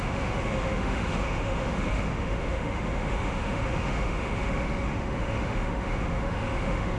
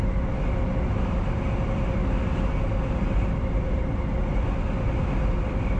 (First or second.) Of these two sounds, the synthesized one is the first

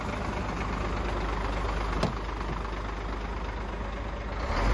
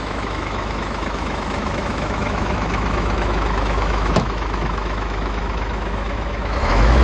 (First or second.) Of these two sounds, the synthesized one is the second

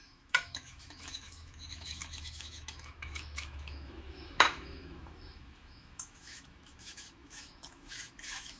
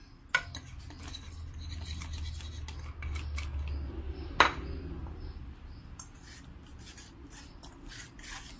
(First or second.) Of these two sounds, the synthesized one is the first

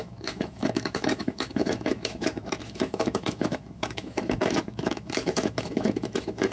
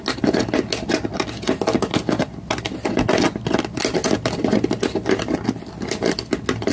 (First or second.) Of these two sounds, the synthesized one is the first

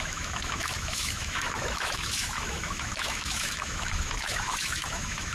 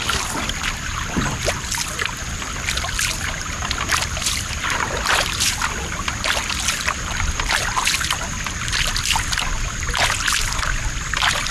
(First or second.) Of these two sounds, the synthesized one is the first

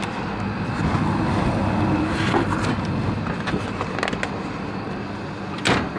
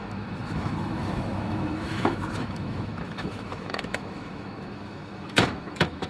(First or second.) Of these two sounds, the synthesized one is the second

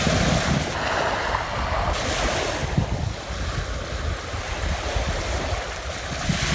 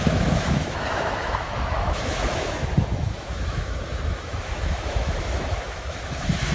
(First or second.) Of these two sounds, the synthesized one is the second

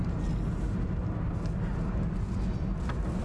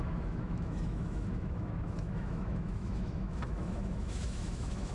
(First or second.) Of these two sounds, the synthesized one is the second